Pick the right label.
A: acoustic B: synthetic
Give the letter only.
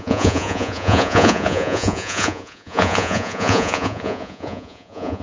B